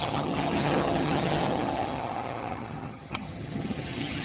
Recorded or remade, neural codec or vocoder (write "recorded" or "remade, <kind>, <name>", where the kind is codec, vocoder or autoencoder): remade, vocoder, HiFi-GAN